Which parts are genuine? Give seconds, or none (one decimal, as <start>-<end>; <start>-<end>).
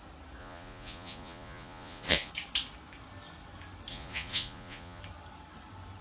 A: 0.0-0.4; 2.3-3.9; 5.0-6.0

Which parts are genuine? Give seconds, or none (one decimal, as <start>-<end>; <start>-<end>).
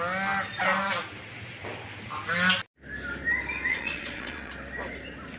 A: 0.0-3.7; 4.5-5.4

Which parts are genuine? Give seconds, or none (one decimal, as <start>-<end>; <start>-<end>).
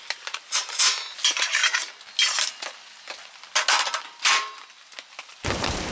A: 1.6-5.1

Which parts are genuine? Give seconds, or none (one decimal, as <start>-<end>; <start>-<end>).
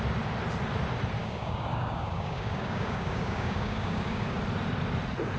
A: 0.0-1.2; 4.4-5.4